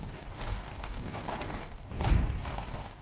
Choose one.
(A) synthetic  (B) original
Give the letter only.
A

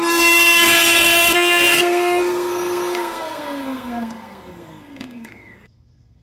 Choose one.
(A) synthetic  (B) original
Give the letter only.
A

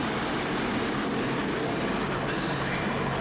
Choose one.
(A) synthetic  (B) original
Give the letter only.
A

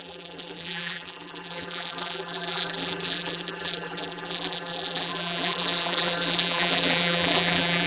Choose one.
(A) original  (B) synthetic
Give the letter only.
B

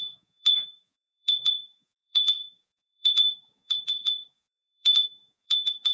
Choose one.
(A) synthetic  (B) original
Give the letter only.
A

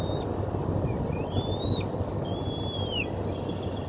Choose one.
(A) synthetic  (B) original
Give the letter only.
B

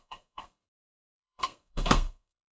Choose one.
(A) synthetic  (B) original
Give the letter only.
A